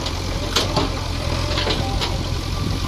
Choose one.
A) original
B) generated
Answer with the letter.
B